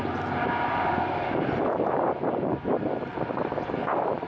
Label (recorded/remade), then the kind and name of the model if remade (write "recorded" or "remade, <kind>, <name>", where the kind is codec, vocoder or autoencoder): remade, vocoder, BigVGAN v2